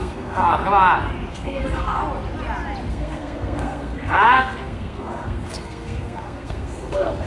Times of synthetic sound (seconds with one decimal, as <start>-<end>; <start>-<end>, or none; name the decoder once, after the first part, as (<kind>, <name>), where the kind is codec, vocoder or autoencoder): 0.0-0.6 (codec, SNAC); 1.3-2.0; 2.9-7.3